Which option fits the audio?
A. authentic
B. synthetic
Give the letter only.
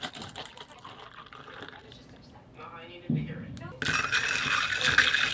A